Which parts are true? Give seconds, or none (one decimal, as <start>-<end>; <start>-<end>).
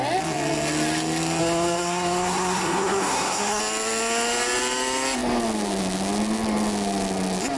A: 0.0-1.4; 3.6-7.6